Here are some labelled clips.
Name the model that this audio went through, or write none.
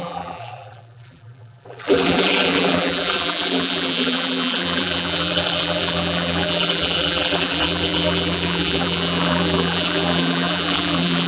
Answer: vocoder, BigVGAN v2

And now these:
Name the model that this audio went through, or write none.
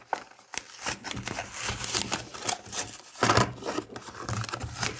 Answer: none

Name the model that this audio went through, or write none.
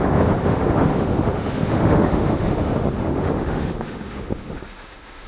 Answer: autoencoder, DAC-VAE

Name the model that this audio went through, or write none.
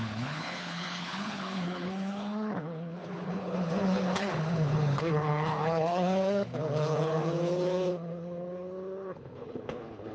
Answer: codec, HILCodec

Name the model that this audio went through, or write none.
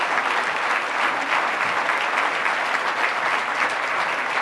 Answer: none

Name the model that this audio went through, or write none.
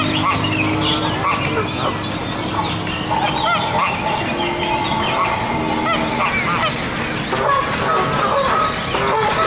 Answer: none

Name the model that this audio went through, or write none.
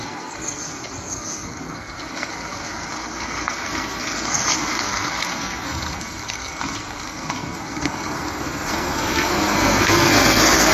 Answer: codec, SNAC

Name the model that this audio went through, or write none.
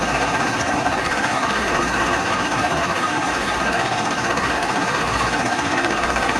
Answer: codec, SNAC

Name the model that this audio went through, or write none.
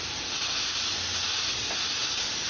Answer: none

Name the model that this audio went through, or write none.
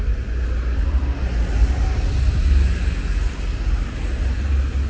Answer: none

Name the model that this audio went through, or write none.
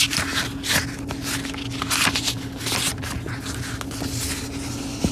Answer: none